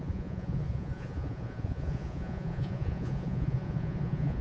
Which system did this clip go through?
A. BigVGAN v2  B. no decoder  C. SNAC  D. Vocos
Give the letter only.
D